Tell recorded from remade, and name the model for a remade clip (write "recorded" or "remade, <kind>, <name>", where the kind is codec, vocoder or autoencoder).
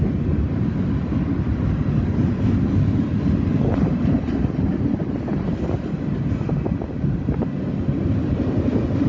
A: recorded